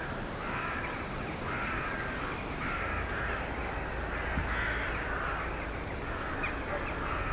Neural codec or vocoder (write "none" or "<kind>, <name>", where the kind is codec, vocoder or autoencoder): none